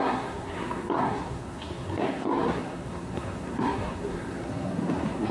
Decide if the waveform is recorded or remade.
remade